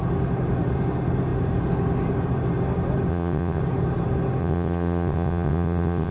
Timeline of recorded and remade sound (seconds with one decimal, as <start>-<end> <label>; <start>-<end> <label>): 0.0-3.1 recorded; 3.1-3.6 remade; 3.6-4.4 recorded; 4.4-6.1 remade